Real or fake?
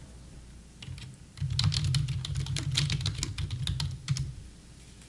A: real